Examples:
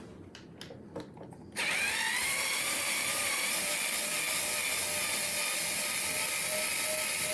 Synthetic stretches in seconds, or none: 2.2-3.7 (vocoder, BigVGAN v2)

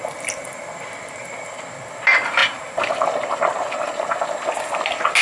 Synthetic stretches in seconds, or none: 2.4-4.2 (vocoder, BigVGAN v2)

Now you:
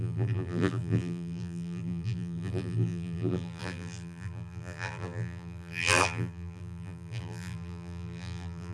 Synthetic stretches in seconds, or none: 0.0-8.7 (vocoder, BigVGAN v2)

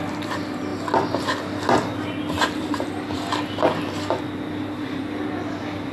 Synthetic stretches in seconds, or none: none